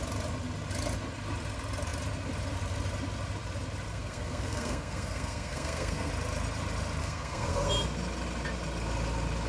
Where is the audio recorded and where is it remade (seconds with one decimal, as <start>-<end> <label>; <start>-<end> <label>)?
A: 0.0-3.9 recorded; 3.9-6.1 remade; 6.1-7.0 recorded; 7.0-7.7 remade; 7.7-9.5 recorded